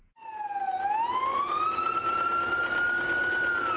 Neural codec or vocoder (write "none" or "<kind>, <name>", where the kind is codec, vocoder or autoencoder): none